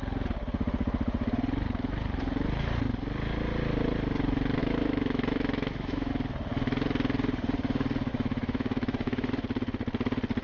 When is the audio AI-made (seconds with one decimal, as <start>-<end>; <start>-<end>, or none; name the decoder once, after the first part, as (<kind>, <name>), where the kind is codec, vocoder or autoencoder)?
4.6-6.1 (autoencoder, DAC-VAE); 8.1-9.3